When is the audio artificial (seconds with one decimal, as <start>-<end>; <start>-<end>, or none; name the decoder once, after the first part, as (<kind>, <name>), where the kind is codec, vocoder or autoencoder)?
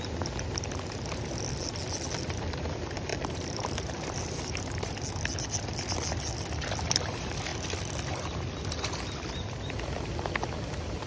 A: 3.1-4.9 (vocoder, BigVGAN v2)